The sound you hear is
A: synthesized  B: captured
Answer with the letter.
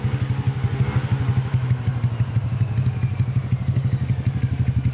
B